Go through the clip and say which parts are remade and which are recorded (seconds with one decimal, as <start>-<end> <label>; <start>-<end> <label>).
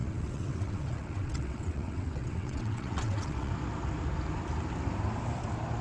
0.0-3.5 remade; 3.5-5.8 recorded